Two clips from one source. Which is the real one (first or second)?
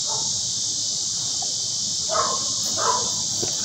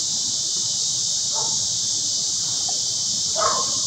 first